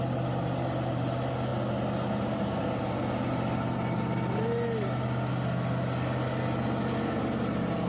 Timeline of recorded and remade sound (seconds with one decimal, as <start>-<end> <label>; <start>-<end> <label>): 0.0-7.9 recorded